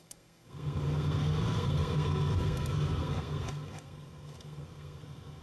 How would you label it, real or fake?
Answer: fake